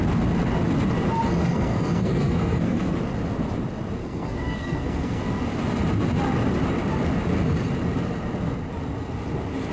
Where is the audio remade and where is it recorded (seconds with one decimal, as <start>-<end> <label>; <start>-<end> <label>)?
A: 0.0-1.4 recorded; 1.4-2.9 remade; 2.9-4.0 recorded; 4.0-5.2 remade; 5.2-9.7 recorded